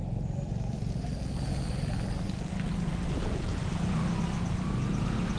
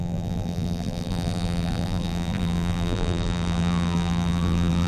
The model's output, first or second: second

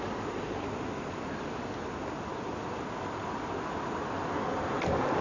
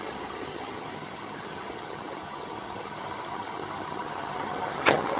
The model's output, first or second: second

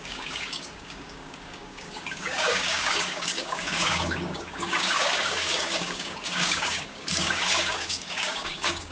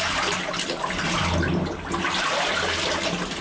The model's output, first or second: first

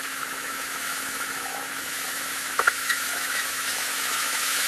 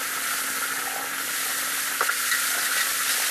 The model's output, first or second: first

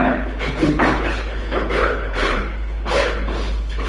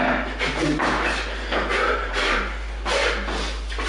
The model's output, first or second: first